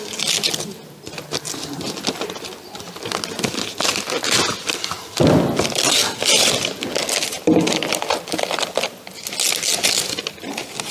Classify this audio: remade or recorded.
recorded